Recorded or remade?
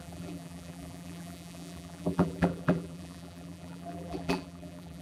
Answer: remade